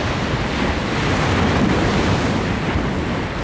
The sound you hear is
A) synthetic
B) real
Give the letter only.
B